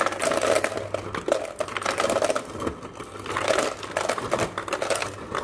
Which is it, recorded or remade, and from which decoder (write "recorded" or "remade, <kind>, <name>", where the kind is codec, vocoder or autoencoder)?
recorded